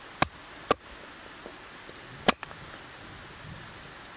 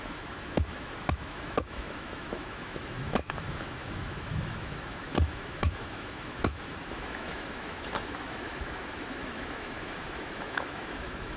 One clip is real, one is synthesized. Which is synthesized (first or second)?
second